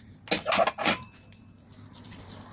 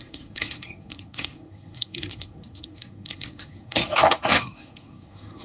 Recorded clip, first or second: first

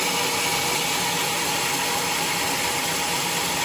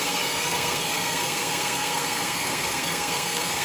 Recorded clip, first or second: first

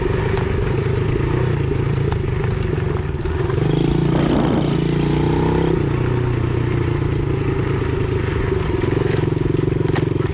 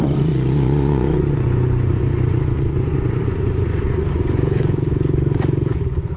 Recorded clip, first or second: first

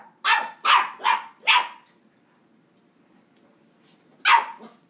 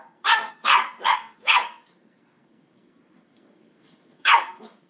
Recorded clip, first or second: first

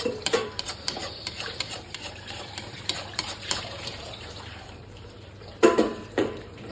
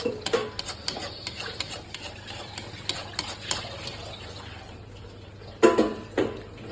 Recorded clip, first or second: second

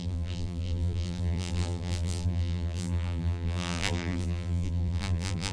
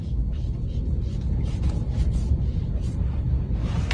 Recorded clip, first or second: second